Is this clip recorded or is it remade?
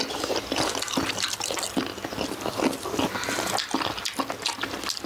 recorded